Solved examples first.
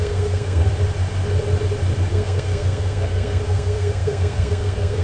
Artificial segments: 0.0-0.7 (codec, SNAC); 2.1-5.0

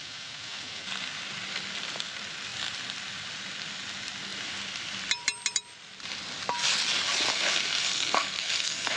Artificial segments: 7.3-9.0 (codec, SNAC)